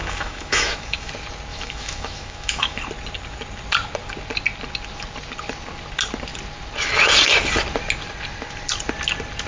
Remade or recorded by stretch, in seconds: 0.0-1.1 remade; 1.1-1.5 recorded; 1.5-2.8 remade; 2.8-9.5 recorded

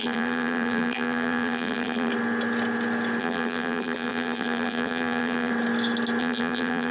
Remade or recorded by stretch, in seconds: 0.0-2.1 remade; 2.1-3.2 recorded; 3.2-5.5 remade; 5.5-6.2 recorded; 6.2-6.9 remade

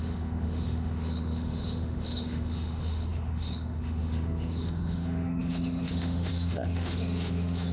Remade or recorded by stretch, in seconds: 0.0-7.7 remade

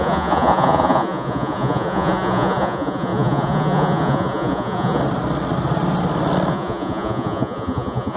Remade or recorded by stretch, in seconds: 0.0-5.0 remade; 5.0-6.5 recorded; 6.5-8.2 remade